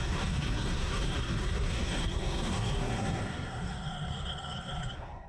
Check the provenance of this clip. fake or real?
fake